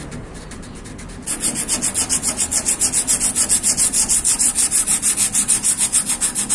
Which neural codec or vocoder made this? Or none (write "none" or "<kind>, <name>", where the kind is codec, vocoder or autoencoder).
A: none